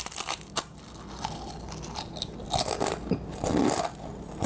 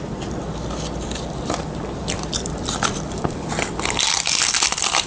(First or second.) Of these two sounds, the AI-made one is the second